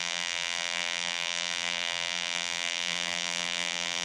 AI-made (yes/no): yes